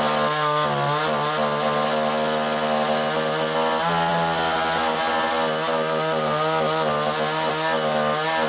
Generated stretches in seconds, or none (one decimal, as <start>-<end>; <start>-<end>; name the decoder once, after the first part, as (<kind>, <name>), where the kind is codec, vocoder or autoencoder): none